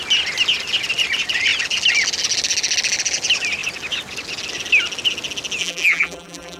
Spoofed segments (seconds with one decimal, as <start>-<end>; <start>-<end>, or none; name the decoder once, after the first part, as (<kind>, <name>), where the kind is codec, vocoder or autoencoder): 5.6-6.6 (vocoder, BigVGAN v2)